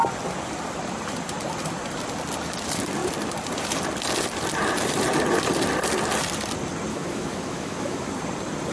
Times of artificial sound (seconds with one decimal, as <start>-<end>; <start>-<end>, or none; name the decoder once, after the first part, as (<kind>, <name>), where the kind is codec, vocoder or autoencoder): 6.9-8.1 (autoencoder, DAC-VAE)